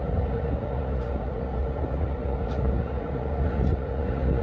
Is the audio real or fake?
fake